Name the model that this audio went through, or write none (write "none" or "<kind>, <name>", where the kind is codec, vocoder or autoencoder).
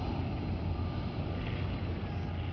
none